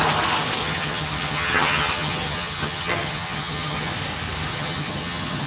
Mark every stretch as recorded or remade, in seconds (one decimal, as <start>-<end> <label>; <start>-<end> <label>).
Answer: 0.0-0.6 recorded; 0.6-3.9 remade; 3.9-4.5 recorded; 4.5-5.5 remade